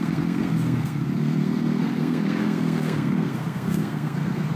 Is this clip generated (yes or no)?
yes